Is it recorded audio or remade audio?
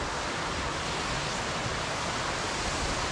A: recorded